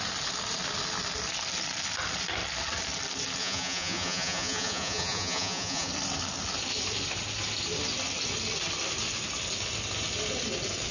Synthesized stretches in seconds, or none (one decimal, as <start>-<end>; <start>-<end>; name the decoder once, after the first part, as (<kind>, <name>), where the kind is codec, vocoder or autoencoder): 3.4-5.9 (vocoder, Vocos)